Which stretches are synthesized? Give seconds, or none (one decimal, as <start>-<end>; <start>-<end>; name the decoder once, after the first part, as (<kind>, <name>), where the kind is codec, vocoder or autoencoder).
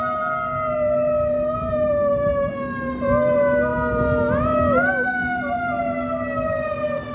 none